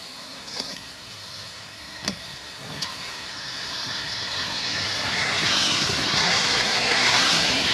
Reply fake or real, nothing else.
fake